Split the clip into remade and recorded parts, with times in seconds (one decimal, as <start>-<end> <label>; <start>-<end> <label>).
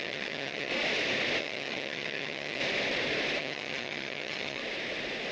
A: 0.0-0.7 remade; 0.7-1.4 recorded; 1.4-2.6 remade; 2.6-3.4 recorded; 3.4-4.6 remade; 4.6-5.3 recorded